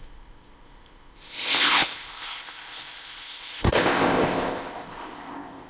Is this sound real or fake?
fake